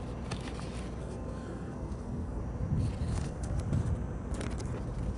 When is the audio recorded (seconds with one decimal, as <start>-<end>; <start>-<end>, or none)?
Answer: 0.0-1.0; 2.4-3.1; 3.6-5.2